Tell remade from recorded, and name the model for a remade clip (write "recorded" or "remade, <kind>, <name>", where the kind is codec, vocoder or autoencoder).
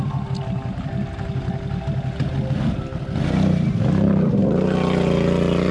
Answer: recorded